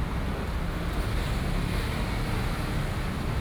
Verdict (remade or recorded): recorded